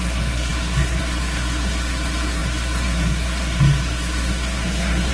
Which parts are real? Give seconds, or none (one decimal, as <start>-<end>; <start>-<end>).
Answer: none